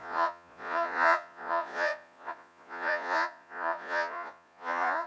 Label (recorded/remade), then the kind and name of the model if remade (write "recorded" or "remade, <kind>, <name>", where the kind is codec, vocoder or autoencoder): remade, vocoder, Vocos